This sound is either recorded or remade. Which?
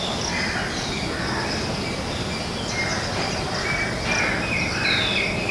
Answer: recorded